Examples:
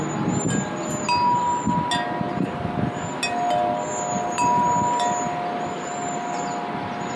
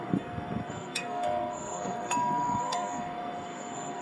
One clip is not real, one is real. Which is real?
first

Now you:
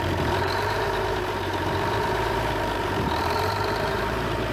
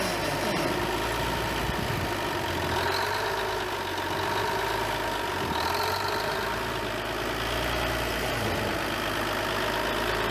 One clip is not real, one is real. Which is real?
second